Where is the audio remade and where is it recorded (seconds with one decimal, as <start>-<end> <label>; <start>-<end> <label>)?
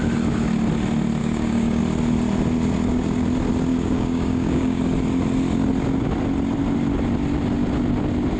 0.0-1.2 recorded; 1.2-1.8 remade; 1.8-3.7 recorded; 3.7-4.8 remade; 4.8-8.4 recorded